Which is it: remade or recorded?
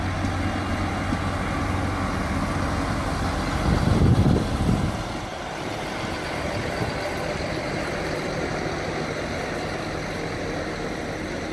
recorded